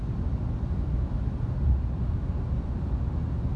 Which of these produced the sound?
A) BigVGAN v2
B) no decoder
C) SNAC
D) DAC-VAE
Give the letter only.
B